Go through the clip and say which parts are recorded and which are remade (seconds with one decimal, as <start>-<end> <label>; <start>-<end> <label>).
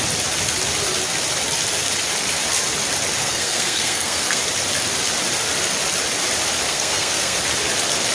0.0-3.2 recorded; 3.2-4.4 remade; 4.4-6.7 recorded; 6.7-7.4 remade; 7.4-8.1 recorded